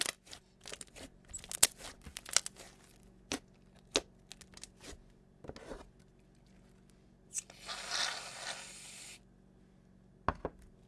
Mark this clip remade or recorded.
recorded